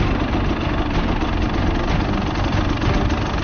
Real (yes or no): yes